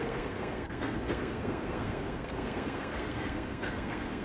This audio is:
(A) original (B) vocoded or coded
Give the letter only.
B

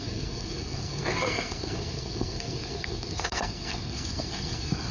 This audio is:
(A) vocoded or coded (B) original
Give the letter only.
A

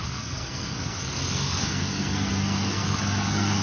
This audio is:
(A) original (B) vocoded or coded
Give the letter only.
B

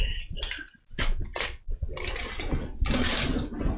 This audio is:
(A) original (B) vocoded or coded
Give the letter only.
A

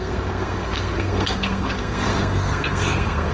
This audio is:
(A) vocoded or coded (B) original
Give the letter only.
A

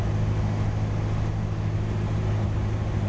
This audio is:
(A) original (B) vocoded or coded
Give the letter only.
A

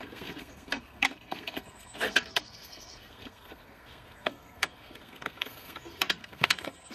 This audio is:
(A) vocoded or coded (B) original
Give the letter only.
A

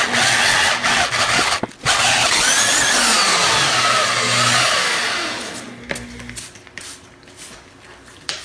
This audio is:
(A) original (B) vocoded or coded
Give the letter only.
A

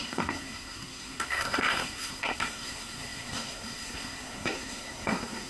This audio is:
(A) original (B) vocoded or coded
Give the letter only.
B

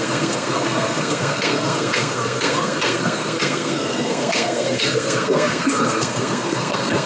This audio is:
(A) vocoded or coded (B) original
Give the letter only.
A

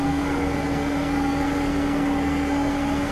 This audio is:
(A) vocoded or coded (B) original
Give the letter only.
A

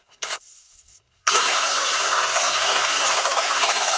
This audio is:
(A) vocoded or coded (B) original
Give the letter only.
A